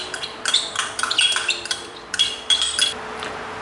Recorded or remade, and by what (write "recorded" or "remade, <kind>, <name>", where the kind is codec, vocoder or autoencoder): remade, vocoder, BigVGAN v2